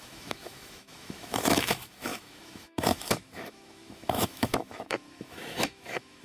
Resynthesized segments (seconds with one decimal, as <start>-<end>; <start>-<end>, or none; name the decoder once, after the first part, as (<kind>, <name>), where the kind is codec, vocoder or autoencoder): 0.0-6.2 (autoencoder, DAC-VAE)